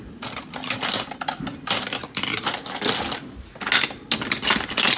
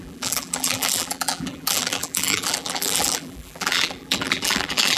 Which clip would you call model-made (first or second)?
second